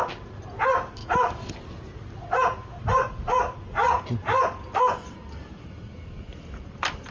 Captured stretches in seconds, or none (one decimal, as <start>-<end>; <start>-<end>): 0.0-1.0; 1.5-7.1

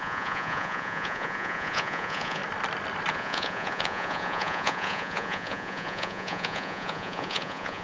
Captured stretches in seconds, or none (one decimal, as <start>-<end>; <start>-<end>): 2.4-3.1